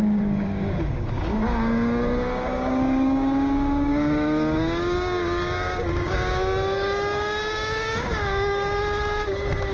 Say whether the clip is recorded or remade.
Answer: remade